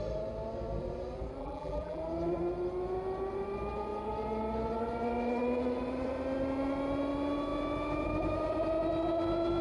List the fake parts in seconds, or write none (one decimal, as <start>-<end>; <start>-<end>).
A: 1.4-2.0